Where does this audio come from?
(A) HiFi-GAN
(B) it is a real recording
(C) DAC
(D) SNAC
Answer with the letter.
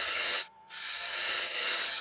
B